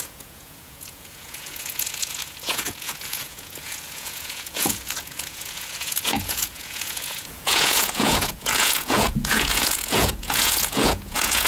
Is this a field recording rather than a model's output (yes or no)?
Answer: no